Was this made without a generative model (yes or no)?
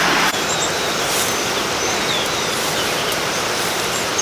yes